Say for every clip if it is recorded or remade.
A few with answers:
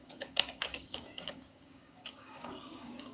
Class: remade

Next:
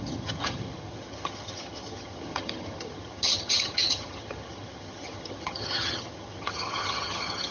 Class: remade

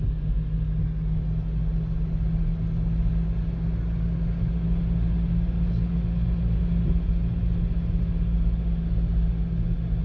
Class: recorded